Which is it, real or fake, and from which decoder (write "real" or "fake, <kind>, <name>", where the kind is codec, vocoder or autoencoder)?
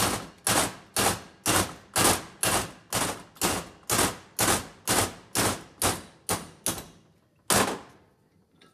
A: real